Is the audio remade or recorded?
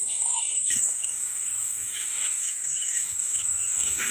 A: remade